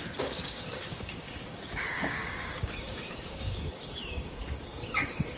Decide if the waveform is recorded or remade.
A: remade